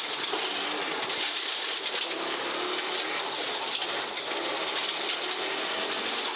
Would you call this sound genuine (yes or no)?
yes